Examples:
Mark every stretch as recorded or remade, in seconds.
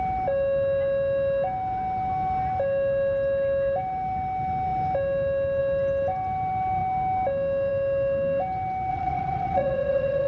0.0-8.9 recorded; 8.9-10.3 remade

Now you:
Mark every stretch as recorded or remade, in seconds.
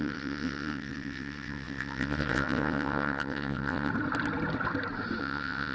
0.0-3.9 remade; 3.9-5.2 recorded; 5.2-5.7 remade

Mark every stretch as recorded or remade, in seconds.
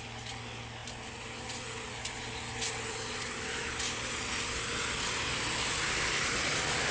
0.0-6.9 recorded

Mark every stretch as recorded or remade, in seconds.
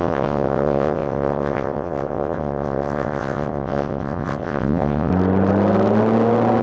0.0-5.1 remade; 5.1-6.6 recorded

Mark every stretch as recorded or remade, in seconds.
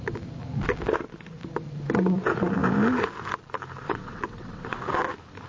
0.0-3.8 recorded; 3.8-4.8 remade; 4.8-5.5 recorded